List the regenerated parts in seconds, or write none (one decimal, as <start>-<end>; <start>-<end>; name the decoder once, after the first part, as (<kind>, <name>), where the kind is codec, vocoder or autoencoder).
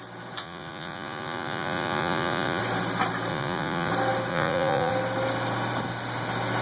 0.4-2.6 (vocoder, Vocos); 3.3-3.9; 4.3-4.9